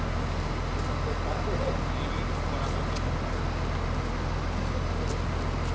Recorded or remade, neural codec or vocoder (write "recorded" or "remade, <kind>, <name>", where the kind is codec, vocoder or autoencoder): recorded